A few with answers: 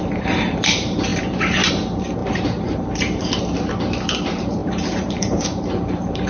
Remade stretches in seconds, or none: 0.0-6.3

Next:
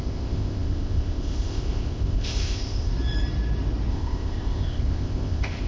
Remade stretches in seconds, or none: 0.0-2.9; 3.9-5.7

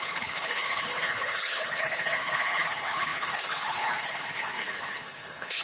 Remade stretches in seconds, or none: 0.0-5.6